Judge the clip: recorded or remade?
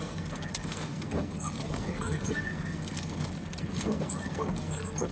remade